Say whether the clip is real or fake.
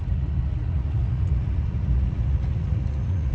fake